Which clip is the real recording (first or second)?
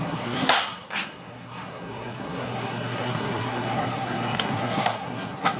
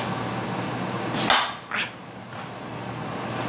second